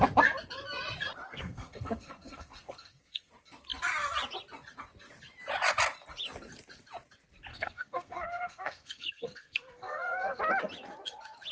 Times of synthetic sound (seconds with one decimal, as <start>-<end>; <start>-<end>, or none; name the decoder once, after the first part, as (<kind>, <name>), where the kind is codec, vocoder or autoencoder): 1.3-3.3 (codec, SNAC); 7.5-10.4

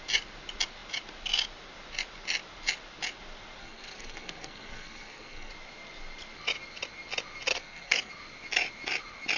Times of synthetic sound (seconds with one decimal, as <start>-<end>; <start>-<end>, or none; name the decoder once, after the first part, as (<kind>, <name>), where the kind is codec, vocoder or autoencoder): 3.6-5.5 (codec, SNAC); 7.5-8.1

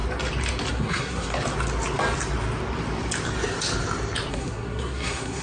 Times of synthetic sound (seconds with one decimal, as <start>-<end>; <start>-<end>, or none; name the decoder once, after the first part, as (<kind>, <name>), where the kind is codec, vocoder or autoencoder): 0.7-1.3 (codec, SNAC); 4.3-5.4

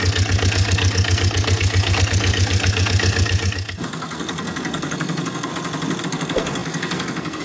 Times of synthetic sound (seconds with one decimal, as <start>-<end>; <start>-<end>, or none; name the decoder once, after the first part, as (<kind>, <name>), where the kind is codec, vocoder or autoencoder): 0.0-5.5 (codec, SNAC); 6.0-7.4

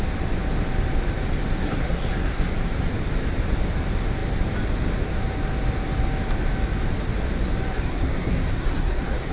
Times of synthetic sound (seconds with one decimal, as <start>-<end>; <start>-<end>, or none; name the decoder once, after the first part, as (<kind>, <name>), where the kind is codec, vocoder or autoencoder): 1.6-2.5 (codec, SNAC); 7.7-9.3